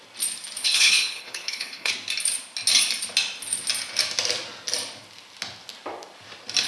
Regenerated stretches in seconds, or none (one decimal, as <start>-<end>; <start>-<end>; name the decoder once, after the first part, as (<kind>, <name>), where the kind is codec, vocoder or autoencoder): 0.6-1.9 (codec, HILCodec)